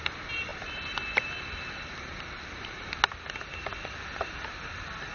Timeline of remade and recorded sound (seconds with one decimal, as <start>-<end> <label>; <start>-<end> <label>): 0.0-0.5 recorded; 0.5-2.9 remade; 2.9-3.7 recorded; 3.7-5.1 remade